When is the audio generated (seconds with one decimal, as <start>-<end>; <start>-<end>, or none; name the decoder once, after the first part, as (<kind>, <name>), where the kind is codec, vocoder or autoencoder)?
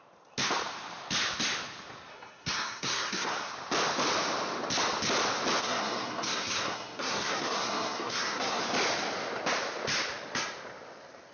2.1-3.5 (codec, SNAC); 5.6-8.6